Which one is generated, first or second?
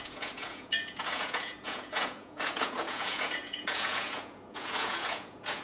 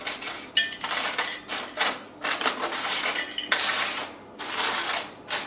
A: first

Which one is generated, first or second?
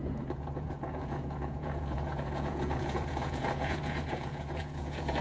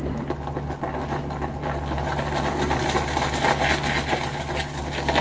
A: first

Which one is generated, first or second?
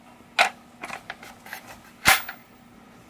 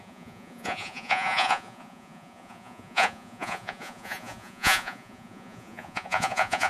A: second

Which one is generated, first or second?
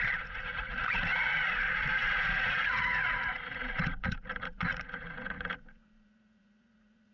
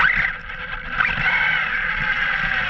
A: first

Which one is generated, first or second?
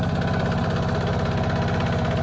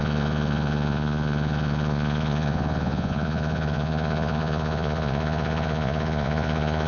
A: second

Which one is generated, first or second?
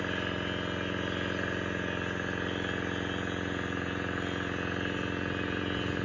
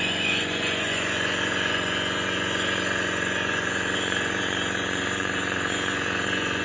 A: second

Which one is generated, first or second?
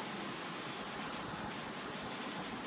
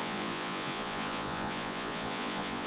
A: second